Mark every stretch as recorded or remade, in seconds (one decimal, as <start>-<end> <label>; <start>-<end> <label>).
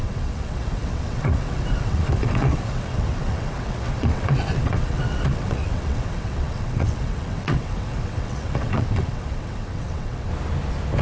0.0-10.3 remade; 10.3-11.0 recorded